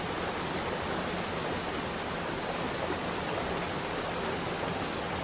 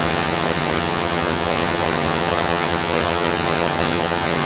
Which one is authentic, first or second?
first